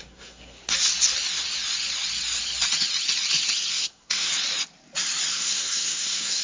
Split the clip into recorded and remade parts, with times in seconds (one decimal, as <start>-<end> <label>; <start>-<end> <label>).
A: 0.0-0.6 remade; 0.6-3.7 recorded; 3.7-4.3 remade; 4.3-5.3 recorded; 5.3-6.4 remade